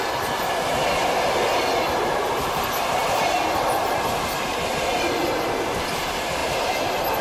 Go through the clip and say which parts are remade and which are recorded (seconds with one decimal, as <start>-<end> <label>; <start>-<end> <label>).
0.0-7.2 recorded